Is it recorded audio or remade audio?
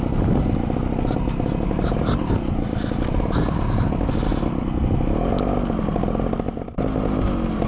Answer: recorded